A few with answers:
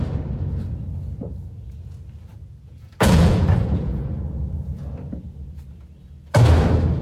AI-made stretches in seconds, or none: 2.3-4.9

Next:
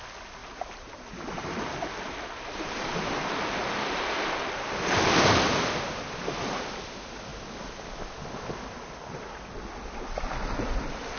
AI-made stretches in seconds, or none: 0.4-4.6

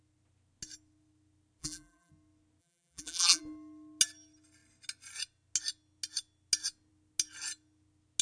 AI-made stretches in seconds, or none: 1.6-2.1; 2.6-3.4

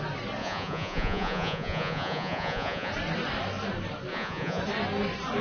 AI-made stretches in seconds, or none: 0.4-2.9; 4.1-4.6

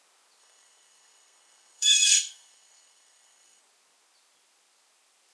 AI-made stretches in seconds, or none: 0.4-3.6

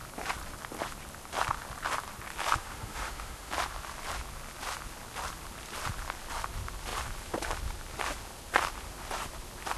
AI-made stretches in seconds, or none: 2.6-3.5

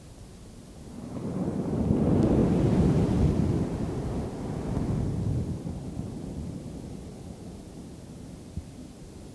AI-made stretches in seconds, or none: none